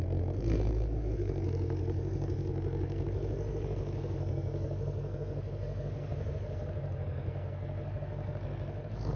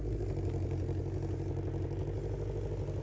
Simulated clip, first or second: first